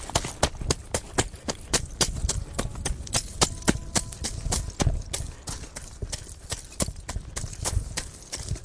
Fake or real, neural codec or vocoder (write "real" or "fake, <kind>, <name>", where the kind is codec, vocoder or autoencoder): real